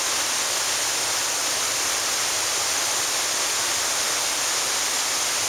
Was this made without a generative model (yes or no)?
yes